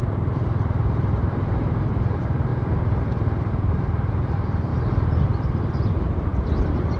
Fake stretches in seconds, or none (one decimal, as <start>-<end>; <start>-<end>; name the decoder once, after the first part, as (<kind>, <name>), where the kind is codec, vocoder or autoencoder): 0.0-2.5 (vocoder, BigVGAN v2); 3.5-4.7; 5.2-7.0

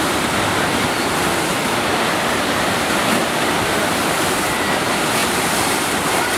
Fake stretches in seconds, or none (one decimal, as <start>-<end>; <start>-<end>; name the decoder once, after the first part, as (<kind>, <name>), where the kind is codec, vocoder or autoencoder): 1.9-4.8 (vocoder, BigVGAN v2)

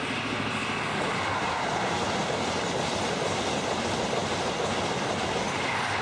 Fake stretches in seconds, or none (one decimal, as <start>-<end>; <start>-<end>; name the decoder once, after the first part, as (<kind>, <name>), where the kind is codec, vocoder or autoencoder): 0.0-4.2 (vocoder, BigVGAN v2); 5.3-6.0